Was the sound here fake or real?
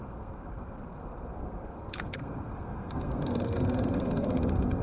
fake